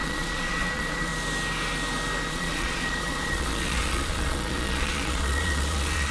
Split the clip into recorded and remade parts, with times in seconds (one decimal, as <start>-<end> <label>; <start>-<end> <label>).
0.0-1.1 remade; 1.1-2.3 recorded; 2.3-6.1 remade